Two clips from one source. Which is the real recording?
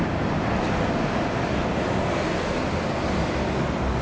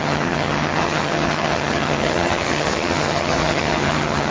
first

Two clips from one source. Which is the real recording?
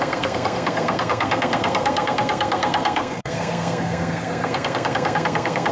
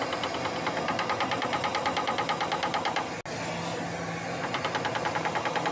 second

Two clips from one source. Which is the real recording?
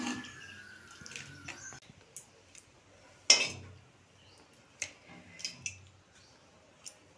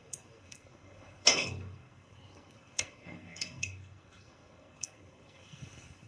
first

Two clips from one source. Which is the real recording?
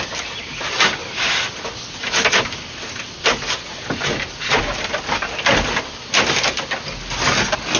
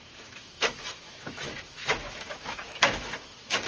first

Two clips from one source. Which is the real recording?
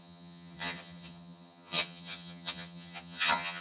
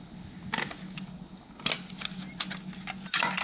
second